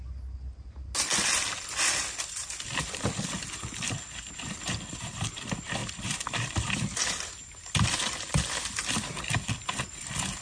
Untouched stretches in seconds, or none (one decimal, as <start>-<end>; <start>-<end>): 0.0-1.1; 3.5-5.8; 7.0-10.4